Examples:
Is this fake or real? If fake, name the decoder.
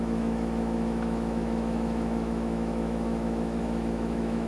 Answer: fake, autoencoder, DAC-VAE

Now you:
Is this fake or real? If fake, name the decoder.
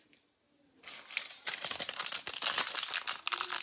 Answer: real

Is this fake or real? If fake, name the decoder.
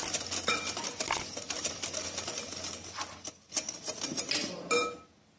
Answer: real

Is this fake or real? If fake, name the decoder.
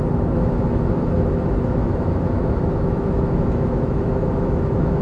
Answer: fake, autoencoder, DAC-VAE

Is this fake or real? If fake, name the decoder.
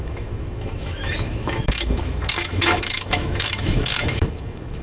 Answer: fake, autoencoder, DAC-VAE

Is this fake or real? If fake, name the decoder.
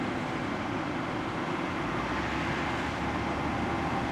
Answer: real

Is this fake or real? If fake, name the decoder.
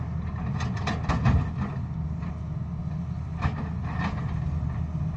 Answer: real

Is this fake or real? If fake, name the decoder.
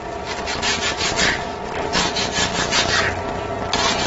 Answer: real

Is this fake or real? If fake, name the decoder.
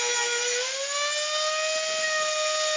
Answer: real